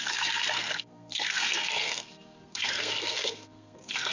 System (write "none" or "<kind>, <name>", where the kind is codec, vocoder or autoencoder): codec, SNAC